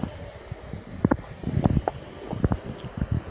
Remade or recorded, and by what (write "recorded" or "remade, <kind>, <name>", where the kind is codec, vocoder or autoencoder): recorded